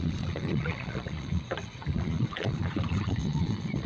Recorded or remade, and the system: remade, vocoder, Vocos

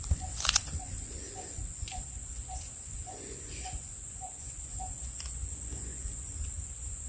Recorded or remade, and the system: remade, vocoder, Vocos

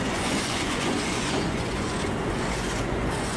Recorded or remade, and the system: remade, vocoder, Vocos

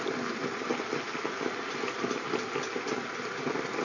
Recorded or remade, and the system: recorded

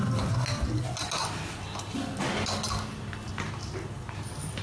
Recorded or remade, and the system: recorded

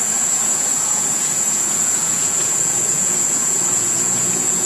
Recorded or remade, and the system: remade, vocoder, Vocos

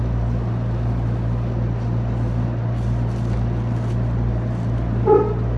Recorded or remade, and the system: recorded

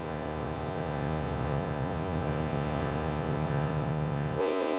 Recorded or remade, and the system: remade, vocoder, Vocos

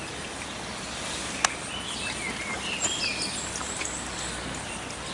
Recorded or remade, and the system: recorded